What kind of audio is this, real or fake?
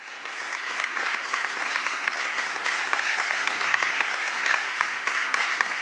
fake